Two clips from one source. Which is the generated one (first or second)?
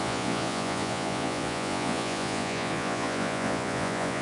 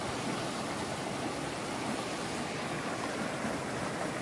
first